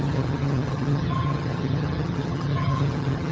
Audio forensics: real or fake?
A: fake